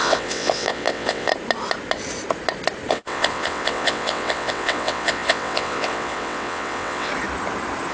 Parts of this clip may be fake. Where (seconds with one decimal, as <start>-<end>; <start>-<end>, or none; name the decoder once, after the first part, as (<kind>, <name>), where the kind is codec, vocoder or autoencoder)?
0.0-1.3 (vocoder, WaveNeXt); 2.9-7.1